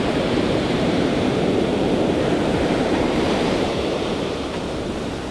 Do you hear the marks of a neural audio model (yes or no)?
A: yes